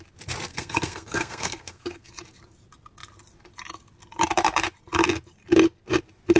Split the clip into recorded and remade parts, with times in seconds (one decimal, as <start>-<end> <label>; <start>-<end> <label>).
0.0-0.5 recorded; 0.5-2.1 remade; 2.1-6.4 recorded